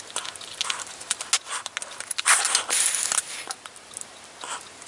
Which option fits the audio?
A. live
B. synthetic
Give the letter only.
A